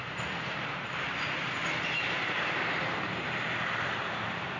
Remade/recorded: remade